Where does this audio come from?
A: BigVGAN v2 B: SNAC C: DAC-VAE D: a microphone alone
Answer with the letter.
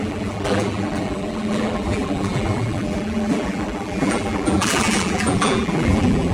A